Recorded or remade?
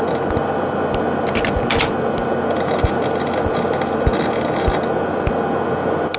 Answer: recorded